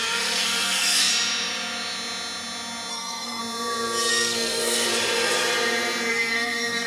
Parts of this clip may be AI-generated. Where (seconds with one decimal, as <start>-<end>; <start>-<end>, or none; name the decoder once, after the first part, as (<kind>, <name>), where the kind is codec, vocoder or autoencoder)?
0.0-1.1 (codec, SNAC); 2.9-3.4; 4.1-4.9; 6.1-6.9